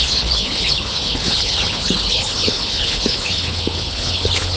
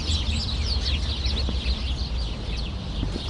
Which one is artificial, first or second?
first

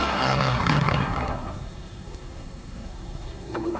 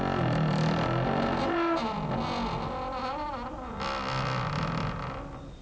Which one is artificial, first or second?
first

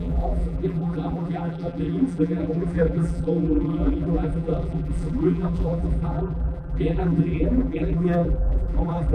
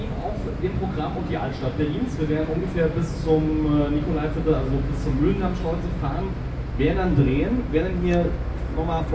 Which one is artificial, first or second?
first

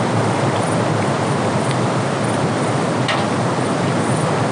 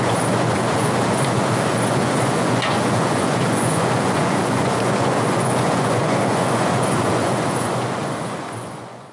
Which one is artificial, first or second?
second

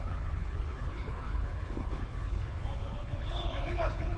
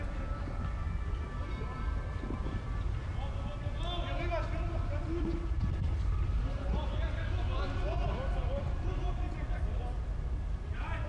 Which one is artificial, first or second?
first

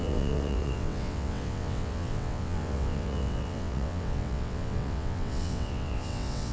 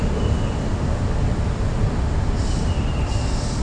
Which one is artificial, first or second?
first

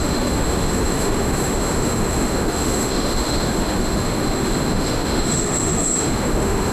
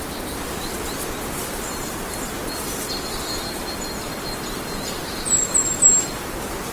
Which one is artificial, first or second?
first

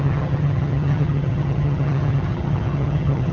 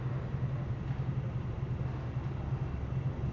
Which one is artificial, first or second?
first